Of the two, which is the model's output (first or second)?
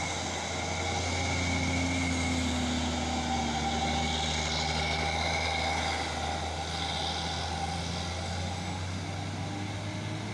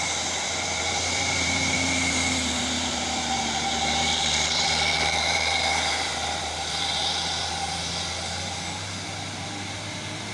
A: second